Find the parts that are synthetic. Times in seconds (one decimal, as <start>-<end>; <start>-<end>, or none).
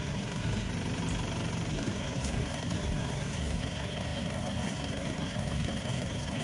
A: 0.0-0.7; 1.7-6.4